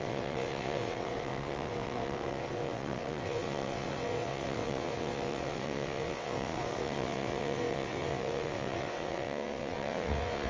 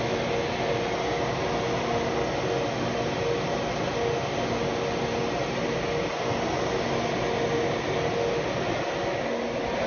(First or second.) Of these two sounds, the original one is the second